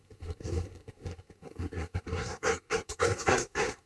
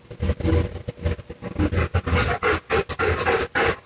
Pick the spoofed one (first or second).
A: first